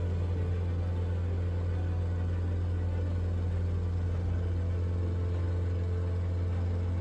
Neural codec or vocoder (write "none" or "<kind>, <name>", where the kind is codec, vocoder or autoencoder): none